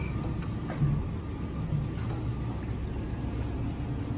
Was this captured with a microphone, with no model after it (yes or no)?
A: yes